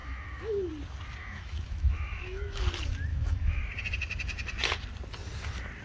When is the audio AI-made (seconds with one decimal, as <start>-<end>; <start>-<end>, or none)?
0.0-0.7; 1.2-2.6; 3.1-3.6